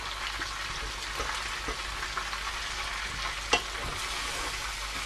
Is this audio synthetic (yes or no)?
no